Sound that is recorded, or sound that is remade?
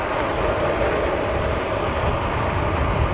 recorded